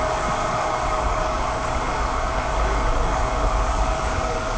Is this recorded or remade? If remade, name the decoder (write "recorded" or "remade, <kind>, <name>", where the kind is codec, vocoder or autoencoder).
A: remade, codec, DAC